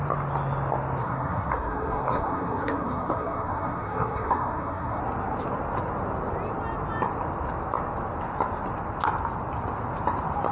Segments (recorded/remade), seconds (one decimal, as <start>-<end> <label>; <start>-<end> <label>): 0.0-1.0 recorded; 1.0-5.0 remade; 5.0-10.5 recorded